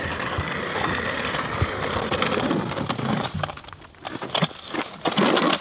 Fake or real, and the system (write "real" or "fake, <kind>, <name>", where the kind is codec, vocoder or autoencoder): real